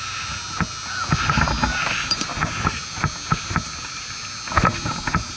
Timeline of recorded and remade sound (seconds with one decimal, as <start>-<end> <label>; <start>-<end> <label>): 0.0-5.4 recorded